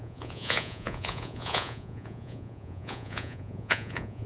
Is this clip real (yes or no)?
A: no